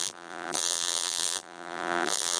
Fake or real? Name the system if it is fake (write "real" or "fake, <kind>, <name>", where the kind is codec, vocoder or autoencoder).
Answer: fake, vocoder, BigVGAN v2